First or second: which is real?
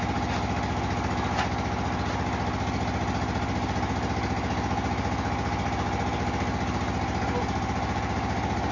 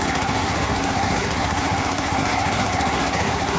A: first